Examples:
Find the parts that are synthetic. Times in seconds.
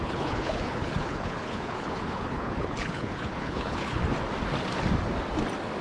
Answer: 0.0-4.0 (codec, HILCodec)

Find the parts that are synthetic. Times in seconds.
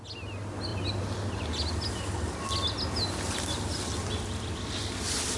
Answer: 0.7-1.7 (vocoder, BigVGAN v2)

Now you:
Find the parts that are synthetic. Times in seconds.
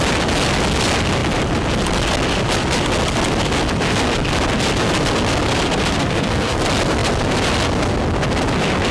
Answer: 5.9-6.6 (codec, SNAC)